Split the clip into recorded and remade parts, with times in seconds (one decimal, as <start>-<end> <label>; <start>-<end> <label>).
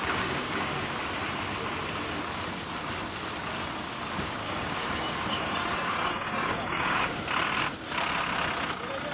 0.0-0.7 remade; 0.7-4.4 recorded; 4.4-7.2 remade; 7.2-9.1 recorded